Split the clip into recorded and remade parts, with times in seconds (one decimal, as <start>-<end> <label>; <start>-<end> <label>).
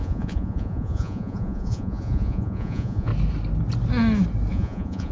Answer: 0.0-3.1 remade; 3.1-4.5 recorded; 4.5-5.1 remade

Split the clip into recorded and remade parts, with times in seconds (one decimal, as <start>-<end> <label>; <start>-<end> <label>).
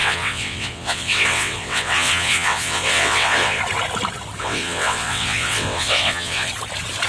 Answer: 0.0-3.6 remade; 3.6-4.4 recorded; 4.4-6.5 remade; 6.5-7.1 recorded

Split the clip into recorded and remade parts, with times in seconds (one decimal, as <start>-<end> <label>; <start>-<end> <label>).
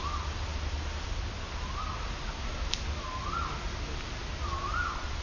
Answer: 0.0-5.2 recorded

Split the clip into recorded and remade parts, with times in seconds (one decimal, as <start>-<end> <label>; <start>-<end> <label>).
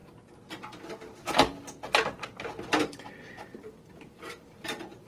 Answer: 0.0-2.8 recorded; 2.8-5.1 remade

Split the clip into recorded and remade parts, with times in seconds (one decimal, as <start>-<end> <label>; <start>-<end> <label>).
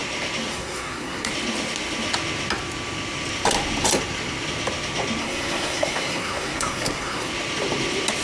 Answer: 0.0-0.5 recorded; 0.5-1.3 remade; 1.3-5.2 recorded; 5.2-7.3 remade; 7.3-8.2 recorded